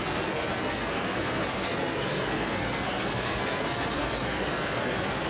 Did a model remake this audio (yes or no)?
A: yes